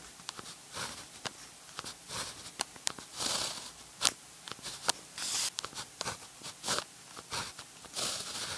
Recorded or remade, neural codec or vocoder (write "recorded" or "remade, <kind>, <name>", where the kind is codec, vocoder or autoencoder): recorded